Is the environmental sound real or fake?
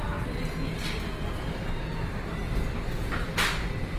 real